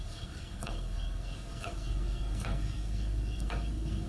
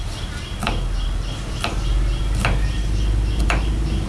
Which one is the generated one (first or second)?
first